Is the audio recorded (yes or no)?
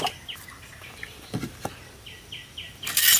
yes